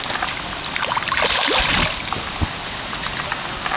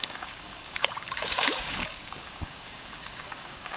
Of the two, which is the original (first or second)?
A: first